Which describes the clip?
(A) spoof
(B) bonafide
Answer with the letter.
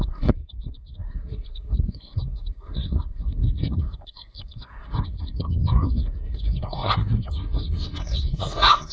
A